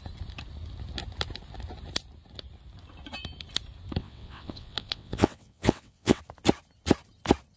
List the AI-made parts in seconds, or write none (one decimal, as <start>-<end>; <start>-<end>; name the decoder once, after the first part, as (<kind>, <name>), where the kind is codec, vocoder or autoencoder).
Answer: 4.0-6.2 (vocoder, WaveNeXt)